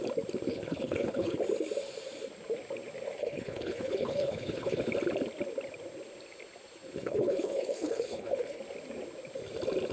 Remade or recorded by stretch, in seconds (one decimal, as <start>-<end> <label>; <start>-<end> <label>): 0.0-0.5 recorded; 0.5-1.4 remade; 1.4-3.2 recorded; 3.2-4.8 remade; 4.8-7.0 recorded; 7.0-8.6 remade; 8.6-9.9 recorded